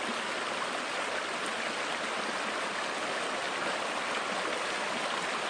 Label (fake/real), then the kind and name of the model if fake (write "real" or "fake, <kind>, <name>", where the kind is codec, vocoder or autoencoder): real